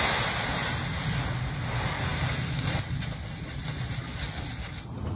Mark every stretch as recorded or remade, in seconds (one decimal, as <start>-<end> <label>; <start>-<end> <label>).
0.0-5.2 recorded

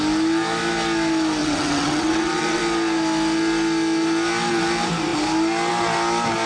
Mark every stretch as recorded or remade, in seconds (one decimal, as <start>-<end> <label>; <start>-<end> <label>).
0.0-1.4 recorded; 1.4-2.6 remade; 2.6-6.5 recorded

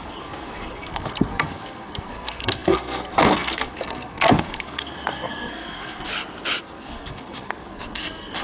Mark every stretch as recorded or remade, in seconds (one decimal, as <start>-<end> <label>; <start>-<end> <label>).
0.0-6.1 remade; 6.1-6.6 recorded; 6.6-8.4 remade

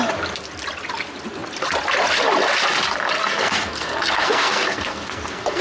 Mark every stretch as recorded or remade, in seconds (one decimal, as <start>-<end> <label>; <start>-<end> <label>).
0.0-3.2 recorded; 3.2-5.6 remade

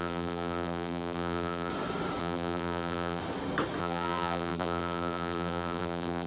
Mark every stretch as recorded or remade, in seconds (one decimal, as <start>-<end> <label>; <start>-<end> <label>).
0.0-1.7 remade; 1.7-2.2 recorded; 2.2-3.2 remade; 3.2-3.8 recorded; 3.8-6.3 remade

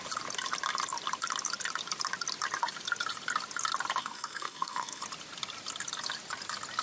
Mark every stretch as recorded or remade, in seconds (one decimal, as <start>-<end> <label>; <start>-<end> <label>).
0.0-4.0 recorded; 4.0-5.0 remade; 5.0-6.8 recorded

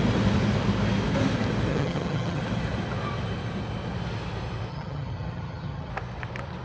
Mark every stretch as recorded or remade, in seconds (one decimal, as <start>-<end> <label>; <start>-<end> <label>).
0.0-1.7 recorded; 1.7-2.4 remade; 2.4-4.7 recorded; 4.7-5.9 remade; 5.9-6.6 recorded